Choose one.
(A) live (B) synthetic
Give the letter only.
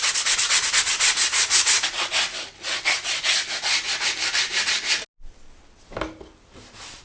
A